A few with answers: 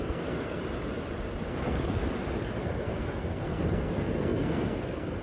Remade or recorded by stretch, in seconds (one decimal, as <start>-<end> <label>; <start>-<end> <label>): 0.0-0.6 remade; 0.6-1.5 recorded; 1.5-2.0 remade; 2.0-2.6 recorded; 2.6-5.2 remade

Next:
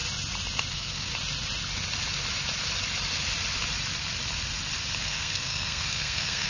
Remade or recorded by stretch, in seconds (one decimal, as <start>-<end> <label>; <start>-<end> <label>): 0.0-0.7 recorded; 0.7-1.1 remade; 1.1-5.0 recorded; 5.0-6.5 remade

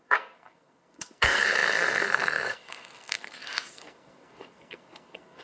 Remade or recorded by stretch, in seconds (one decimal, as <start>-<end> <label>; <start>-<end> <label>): 0.0-5.4 remade

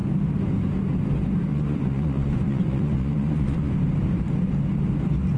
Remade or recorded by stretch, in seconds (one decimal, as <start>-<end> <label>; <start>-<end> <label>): 0.0-1.5 recorded; 1.5-3.7 remade; 3.7-5.4 recorded

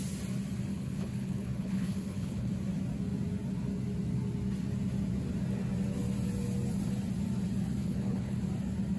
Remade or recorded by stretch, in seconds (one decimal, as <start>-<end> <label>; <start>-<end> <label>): 0.0-0.7 recorded; 0.7-2.5 remade; 2.5-7.8 recorded; 7.8-8.4 remade; 8.4-9.0 recorded

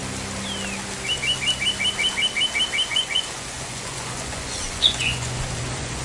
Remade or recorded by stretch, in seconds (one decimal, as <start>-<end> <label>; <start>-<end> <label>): 0.0-2.9 recorded; 2.9-6.0 remade